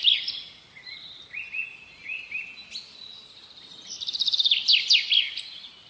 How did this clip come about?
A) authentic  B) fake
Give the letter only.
A